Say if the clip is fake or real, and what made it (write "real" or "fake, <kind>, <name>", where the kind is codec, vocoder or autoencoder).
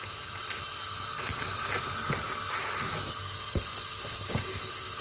real